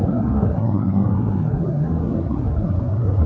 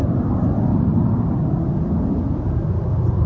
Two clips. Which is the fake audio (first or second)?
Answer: first